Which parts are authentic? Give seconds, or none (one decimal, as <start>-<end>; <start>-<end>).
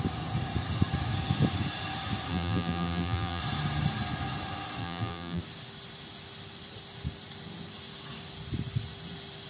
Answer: 0.0-2.3; 3.4-4.8; 5.4-9.5